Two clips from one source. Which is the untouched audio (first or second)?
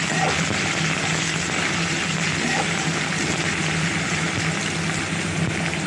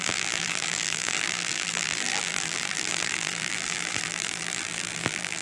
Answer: first